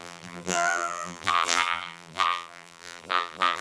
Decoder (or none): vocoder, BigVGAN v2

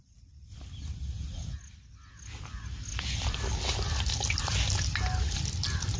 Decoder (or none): none